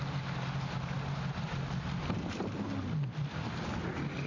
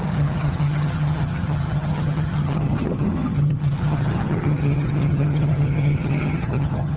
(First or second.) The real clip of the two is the first